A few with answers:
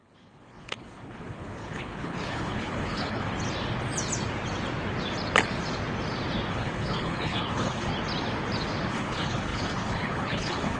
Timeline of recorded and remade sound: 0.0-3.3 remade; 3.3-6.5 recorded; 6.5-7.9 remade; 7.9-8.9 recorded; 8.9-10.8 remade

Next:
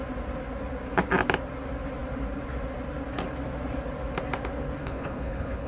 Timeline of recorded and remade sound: 0.0-4.8 recorded; 4.8-5.7 remade

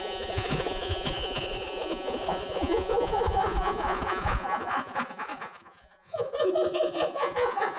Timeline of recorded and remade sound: 0.0-7.8 remade

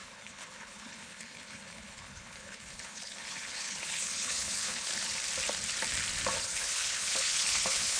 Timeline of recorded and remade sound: 0.0-4.9 remade; 4.9-6.4 recorded; 6.4-8.0 remade

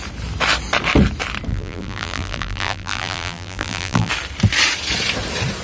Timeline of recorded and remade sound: 0.0-1.5 recorded; 1.5-4.1 remade; 4.1-5.6 recorded